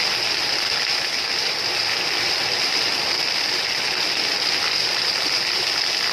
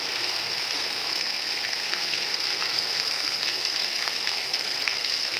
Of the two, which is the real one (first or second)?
first